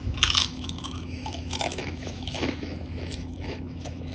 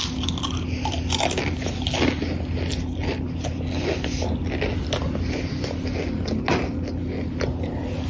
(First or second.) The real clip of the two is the second